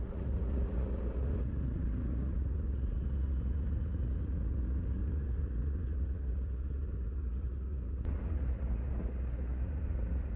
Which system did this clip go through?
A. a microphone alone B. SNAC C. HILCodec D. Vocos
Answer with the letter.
D